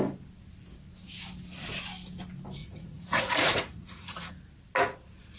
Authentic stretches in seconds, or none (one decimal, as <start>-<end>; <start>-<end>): 0.0-2.6; 4.3-5.4